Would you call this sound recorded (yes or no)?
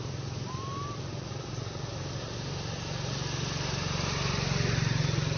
yes